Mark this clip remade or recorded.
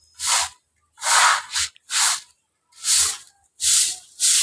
recorded